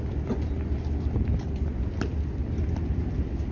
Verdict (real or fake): real